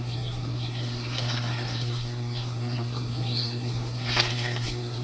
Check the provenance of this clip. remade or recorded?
remade